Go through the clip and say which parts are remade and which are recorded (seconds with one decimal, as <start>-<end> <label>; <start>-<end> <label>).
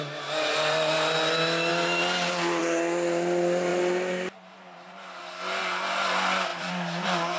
0.0-6.5 recorded; 6.5-7.4 remade